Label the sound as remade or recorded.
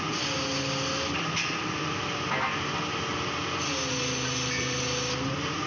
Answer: recorded